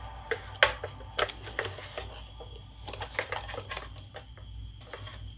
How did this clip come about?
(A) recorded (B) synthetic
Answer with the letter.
A